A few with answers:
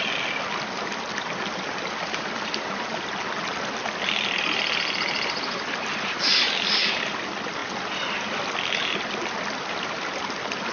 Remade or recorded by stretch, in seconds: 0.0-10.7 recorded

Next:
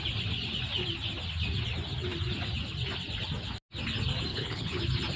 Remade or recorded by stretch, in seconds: 0.0-4.3 recorded; 4.3-4.8 remade; 4.8-5.2 recorded

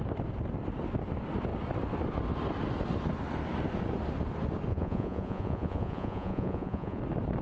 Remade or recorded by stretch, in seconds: 0.0-4.7 recorded; 4.7-7.0 remade; 7.0-7.4 recorded

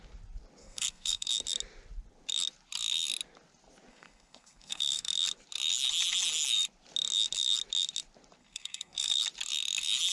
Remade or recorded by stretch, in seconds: 0.0-0.6 recorded; 0.6-1.3 remade; 1.3-3.9 recorded; 3.9-5.1 remade; 5.1-8.4 recorded; 8.4-9.2 remade; 9.2-10.1 recorded

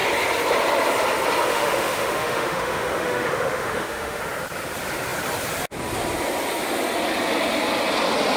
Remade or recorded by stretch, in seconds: 0.0-1.5 recorded; 1.5-4.2 remade; 4.2-8.4 recorded

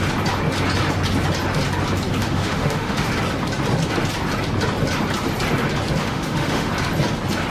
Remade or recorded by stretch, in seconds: 0.0-2.2 recorded; 2.2-3.1 remade; 3.1-6.0 recorded; 6.0-6.7 remade; 6.7-7.5 recorded

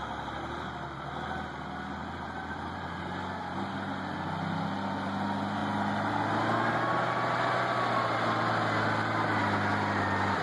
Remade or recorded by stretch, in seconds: 0.0-2.0 recorded; 2.0-3.0 remade; 3.0-10.4 recorded

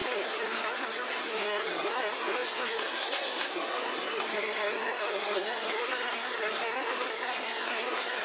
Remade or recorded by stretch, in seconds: 0.0-8.2 remade